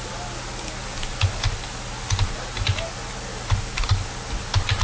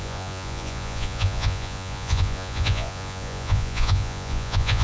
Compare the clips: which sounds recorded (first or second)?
first